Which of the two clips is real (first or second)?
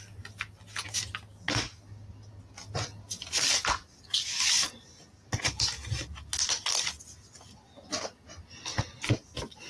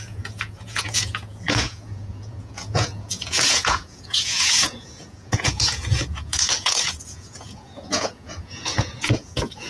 first